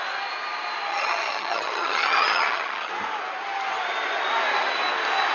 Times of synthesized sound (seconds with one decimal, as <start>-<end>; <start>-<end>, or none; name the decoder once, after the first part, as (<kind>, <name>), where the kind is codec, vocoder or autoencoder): 0.9-2.9 (vocoder, HiFi-GAN)